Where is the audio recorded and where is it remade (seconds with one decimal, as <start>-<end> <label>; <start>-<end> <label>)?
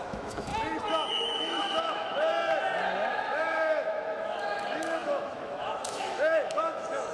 0.0-0.5 remade; 0.5-1.1 recorded; 1.1-2.3 remade; 2.3-3.1 recorded; 3.1-7.1 remade